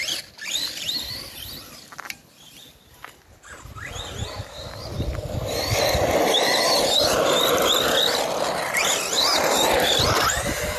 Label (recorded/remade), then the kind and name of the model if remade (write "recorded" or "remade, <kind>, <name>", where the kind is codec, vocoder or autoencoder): recorded